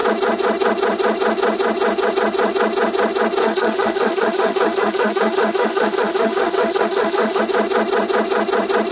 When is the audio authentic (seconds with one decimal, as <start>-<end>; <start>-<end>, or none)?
0.0-3.4; 7.4-8.9